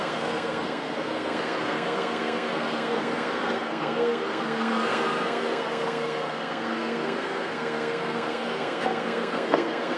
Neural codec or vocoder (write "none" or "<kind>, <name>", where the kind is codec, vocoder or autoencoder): codec, SNAC